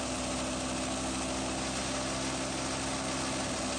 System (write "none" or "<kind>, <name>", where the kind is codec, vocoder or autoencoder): none